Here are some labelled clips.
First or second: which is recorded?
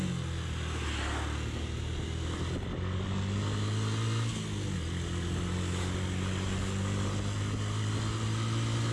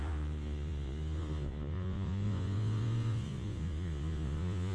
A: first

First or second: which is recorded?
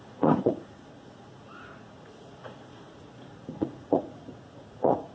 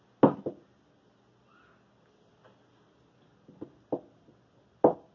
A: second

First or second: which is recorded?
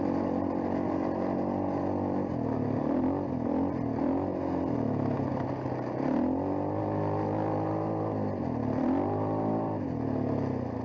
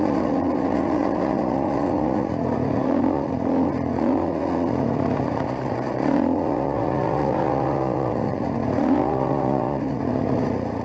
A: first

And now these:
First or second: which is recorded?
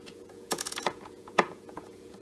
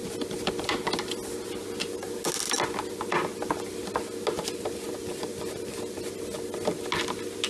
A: second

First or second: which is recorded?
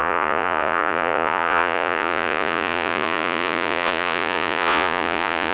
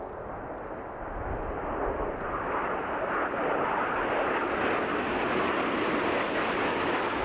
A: second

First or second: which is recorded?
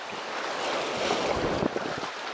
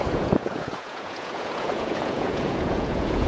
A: first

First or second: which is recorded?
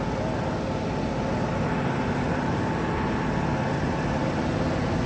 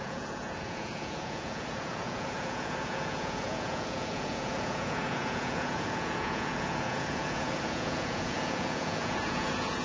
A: first